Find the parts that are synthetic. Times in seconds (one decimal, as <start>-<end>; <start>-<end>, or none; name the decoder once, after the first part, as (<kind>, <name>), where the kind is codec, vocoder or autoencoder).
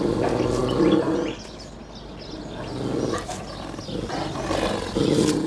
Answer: none